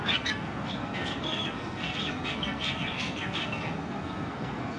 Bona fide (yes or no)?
no